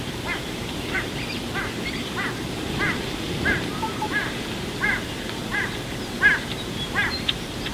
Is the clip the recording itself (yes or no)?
no